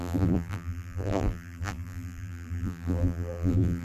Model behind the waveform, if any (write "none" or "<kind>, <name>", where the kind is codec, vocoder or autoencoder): vocoder, BigVGAN v2